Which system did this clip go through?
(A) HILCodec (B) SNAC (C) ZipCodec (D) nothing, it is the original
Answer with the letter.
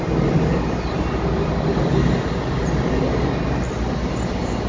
D